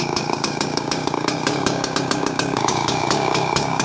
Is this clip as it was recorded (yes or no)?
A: no